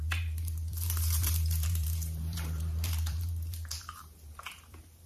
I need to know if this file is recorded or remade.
remade